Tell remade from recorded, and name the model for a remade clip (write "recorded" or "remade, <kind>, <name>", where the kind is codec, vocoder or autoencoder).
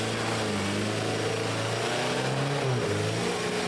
recorded